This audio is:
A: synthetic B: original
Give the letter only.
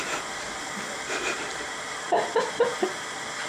A